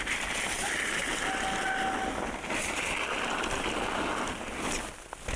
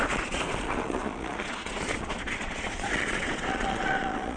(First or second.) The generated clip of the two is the second